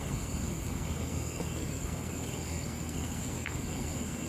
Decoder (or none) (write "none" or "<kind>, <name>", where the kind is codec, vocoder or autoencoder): codec, SNAC